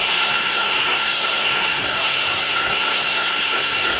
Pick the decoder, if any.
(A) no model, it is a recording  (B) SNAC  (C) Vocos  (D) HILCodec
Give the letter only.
B